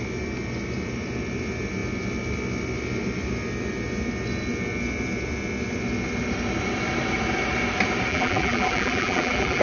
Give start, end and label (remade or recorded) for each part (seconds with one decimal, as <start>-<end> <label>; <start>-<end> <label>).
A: 0.0-8.1 recorded; 8.1-9.6 remade